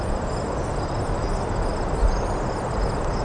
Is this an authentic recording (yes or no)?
yes